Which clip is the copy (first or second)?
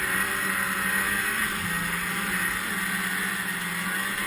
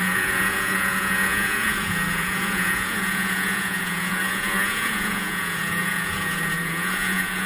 second